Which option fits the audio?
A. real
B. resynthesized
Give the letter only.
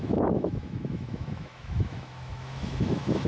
B